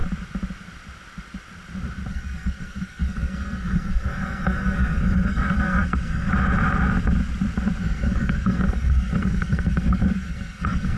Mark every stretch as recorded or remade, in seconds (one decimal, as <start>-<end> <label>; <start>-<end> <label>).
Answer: 0.0-2.1 recorded; 2.1-6.3 remade; 6.3-7.8 recorded; 7.8-11.0 remade